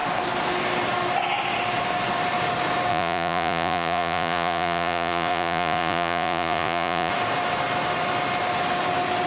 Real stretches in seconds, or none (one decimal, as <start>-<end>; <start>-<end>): 0.0-2.9; 7.1-9.3